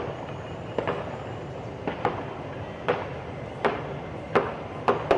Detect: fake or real real